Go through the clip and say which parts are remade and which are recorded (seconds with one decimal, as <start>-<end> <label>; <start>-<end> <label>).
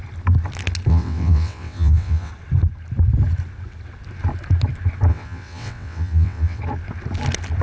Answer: 0.0-0.9 recorded; 0.9-2.3 remade; 2.3-5.1 recorded; 5.1-6.6 remade; 6.6-7.6 recorded